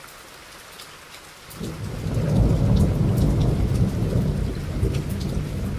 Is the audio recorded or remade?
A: recorded